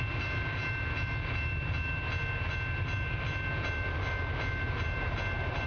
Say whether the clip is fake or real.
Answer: real